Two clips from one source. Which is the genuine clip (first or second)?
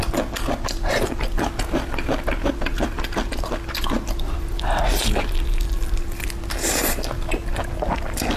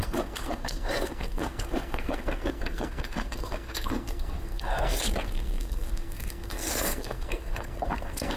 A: first